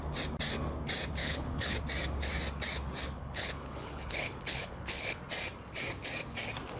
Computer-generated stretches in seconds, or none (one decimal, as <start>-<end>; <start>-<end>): 1.2-1.8; 3.0-5.2